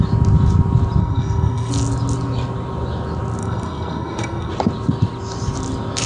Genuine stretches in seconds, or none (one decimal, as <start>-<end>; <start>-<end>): 0.0-1.0; 1.7-3.4; 4.5-6.1